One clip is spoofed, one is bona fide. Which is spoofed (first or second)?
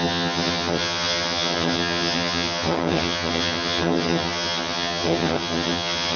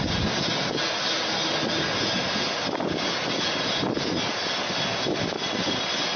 first